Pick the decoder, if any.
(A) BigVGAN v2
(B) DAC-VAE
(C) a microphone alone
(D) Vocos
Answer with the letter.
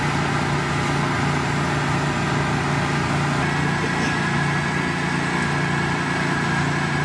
C